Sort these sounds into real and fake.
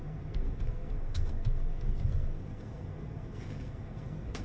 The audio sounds fake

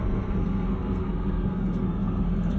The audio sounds fake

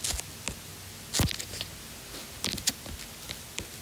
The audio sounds real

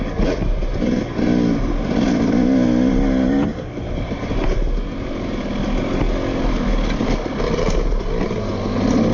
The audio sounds real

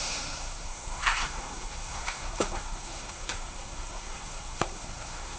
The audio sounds fake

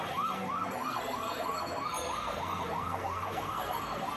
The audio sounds fake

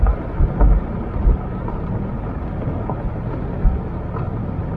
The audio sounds real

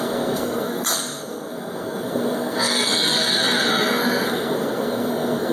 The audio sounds fake